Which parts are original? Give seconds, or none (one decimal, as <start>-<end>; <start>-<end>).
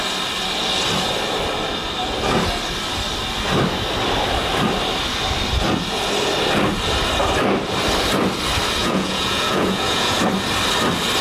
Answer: 0.0-8.8; 10.2-11.2